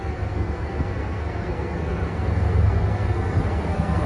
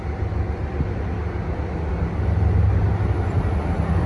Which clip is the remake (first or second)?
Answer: first